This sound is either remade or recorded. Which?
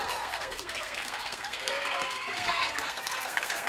remade